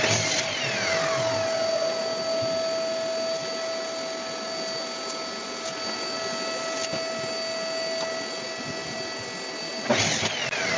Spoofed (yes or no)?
no